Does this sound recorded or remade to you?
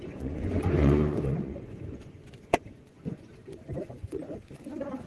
remade